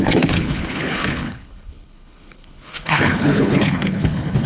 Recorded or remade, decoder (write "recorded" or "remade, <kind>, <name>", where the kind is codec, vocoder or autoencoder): remade, codec, HILCodec